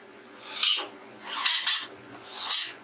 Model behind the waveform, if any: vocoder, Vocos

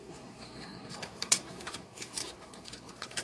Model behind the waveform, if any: codec, SNAC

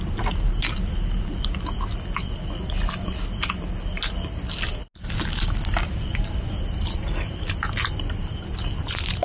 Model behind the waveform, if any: none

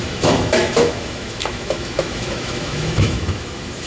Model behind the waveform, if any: autoencoder, DAC-VAE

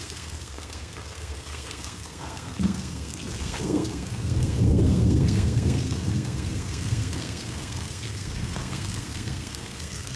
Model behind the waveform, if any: codec, SNAC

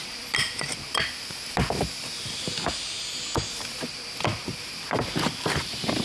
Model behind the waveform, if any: none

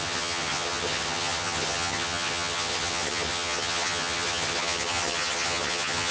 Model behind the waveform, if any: vocoder, HiFi-GAN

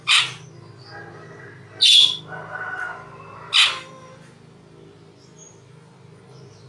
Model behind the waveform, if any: none